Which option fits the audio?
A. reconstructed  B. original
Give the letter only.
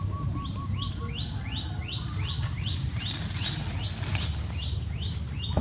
A